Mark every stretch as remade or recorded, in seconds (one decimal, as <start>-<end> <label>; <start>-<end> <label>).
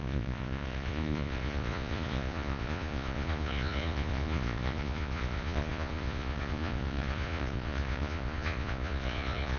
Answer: 0.0-9.6 remade